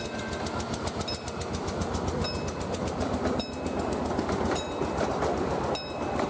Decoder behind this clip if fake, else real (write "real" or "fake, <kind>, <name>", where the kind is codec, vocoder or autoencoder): fake, vocoder, BigVGAN v2